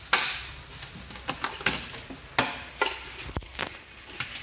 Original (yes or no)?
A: yes